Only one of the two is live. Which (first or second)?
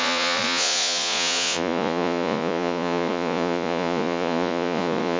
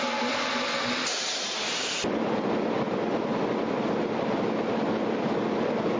second